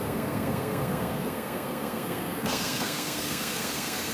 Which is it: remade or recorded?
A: remade